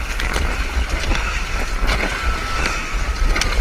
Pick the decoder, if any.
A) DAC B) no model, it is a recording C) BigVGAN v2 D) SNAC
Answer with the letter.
B